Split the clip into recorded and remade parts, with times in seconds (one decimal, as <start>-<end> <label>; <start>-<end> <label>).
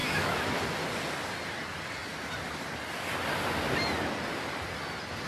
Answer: 0.0-0.6 remade; 0.6-5.3 recorded